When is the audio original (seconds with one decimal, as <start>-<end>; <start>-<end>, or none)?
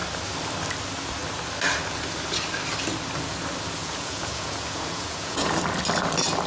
0.0-3.8; 5.5-6.5